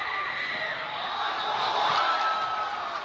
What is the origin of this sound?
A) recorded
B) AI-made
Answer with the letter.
A